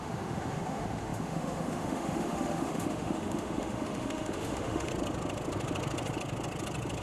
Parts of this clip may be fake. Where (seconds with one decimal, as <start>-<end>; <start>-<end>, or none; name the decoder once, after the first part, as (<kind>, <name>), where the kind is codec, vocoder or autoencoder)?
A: 0.0-4.9 (autoencoder, DAC-VAE)